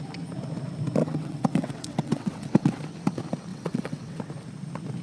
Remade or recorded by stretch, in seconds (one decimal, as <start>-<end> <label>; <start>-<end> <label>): 0.0-1.0 recorded; 1.0-2.8 remade; 2.8-3.5 recorded; 3.5-4.2 remade; 4.2-5.0 recorded